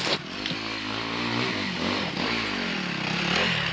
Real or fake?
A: real